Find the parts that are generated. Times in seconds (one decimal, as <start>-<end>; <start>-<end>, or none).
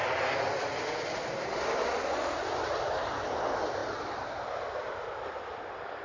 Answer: none